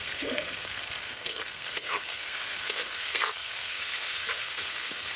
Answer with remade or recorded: remade